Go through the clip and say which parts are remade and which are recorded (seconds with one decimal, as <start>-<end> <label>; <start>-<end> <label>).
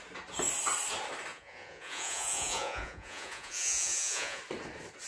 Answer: 0.0-1.3 recorded; 1.3-4.4 remade; 4.4-5.1 recorded